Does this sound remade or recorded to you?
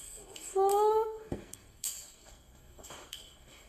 remade